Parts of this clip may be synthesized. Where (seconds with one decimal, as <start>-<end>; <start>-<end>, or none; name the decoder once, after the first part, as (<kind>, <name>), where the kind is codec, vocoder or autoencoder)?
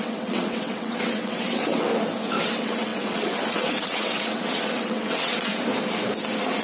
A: 0.0-1.9 (vocoder, WaveNeXt); 2.4-5.5